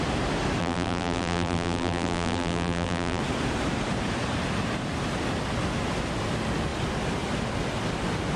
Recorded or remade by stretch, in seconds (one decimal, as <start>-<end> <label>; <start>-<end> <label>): 0.0-0.6 recorded; 0.6-3.2 remade; 3.2-8.4 recorded